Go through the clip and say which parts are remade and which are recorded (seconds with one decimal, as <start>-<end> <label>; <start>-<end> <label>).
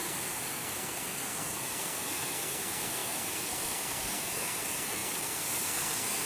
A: 0.0-6.3 remade